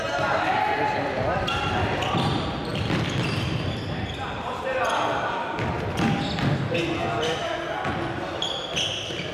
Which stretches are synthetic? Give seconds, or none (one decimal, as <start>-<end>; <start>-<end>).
none